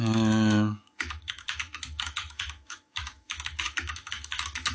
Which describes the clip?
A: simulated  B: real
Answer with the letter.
A